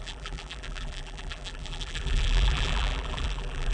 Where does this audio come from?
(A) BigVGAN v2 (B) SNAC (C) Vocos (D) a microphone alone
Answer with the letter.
A